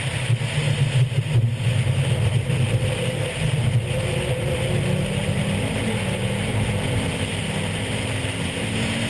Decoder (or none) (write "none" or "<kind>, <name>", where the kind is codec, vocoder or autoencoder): none